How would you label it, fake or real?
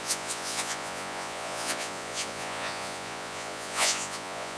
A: fake